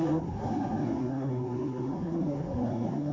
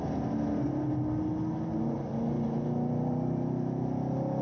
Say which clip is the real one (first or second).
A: second